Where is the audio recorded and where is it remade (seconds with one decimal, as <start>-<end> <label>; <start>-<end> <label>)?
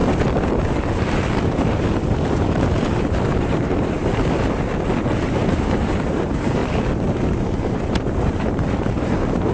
0.0-2.3 recorded; 2.3-4.0 remade; 4.0-5.2 recorded; 5.2-6.6 remade; 6.6-7.1 recorded; 7.1-9.5 remade